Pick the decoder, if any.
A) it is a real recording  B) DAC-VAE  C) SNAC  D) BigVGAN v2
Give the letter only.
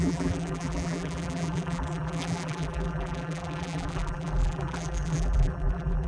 D